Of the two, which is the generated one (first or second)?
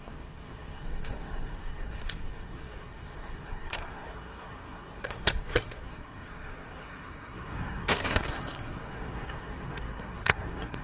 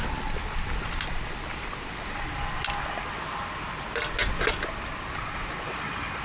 first